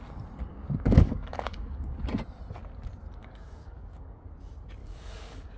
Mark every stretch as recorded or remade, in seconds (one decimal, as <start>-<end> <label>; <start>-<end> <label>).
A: 0.0-0.5 recorded; 0.5-2.0 remade; 2.0-3.2 recorded; 3.2-4.2 remade; 4.2-4.8 recorded; 4.8-5.6 remade